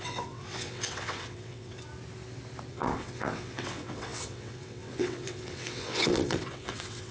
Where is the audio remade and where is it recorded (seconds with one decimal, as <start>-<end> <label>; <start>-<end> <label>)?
0.0-1.9 remade; 1.9-2.7 recorded; 2.7-7.1 remade